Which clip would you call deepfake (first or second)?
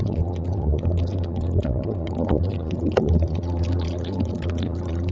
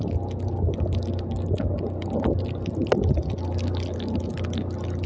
first